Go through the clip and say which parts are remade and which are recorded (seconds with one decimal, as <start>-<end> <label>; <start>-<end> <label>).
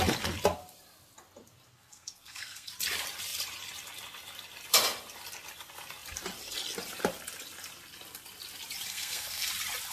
0.0-1.7 recorded; 1.7-2.7 remade; 2.7-8.9 recorded; 8.9-9.5 remade; 9.5-9.9 recorded